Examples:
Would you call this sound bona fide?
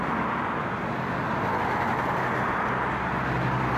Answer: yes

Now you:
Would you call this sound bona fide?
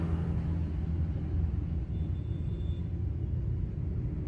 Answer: yes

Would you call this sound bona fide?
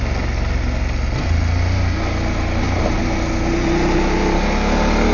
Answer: yes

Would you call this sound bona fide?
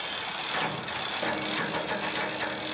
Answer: yes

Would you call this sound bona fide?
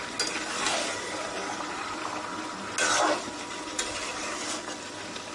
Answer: yes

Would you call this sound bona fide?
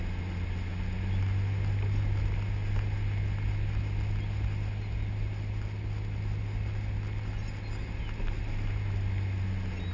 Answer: yes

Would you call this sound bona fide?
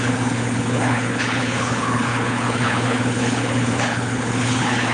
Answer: no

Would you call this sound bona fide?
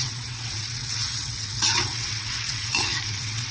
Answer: no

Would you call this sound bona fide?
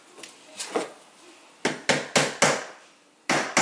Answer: yes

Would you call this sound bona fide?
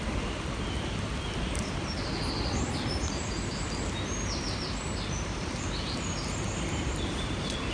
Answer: yes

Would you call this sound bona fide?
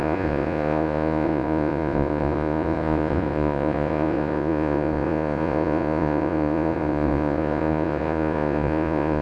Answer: no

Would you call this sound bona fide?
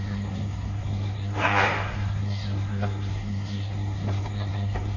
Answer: no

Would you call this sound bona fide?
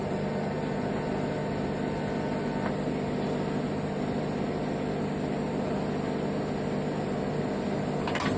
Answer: yes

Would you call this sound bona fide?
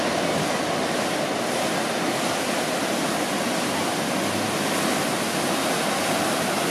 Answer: yes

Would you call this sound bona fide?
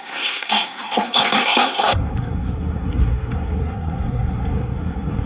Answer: no